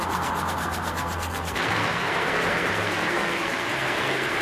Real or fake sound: fake